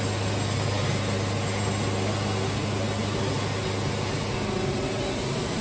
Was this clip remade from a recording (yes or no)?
no